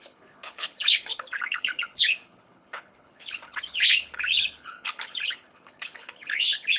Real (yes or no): no